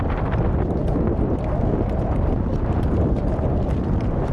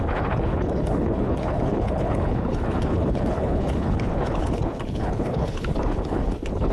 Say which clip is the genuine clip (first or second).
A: first